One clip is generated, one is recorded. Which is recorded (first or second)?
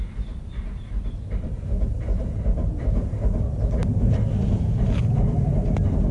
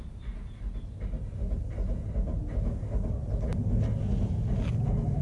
second